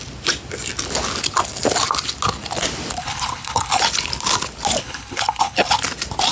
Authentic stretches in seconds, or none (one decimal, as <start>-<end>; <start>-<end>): 0.0-3.0; 3.8-4.8; 5.8-6.3